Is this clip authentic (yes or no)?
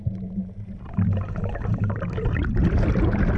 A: yes